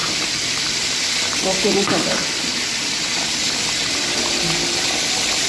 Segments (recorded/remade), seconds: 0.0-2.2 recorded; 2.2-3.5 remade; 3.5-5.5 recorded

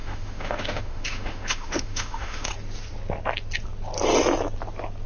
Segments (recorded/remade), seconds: 0.0-2.5 remade; 2.5-5.1 recorded